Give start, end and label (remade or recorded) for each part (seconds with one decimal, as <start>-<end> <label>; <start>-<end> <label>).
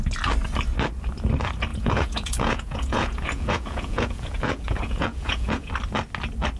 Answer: 0.0-1.7 recorded; 1.7-5.7 remade; 5.7-6.6 recorded